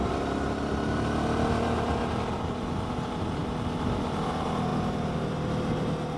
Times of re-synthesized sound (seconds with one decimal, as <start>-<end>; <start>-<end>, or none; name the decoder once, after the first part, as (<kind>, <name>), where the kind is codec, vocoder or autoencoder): none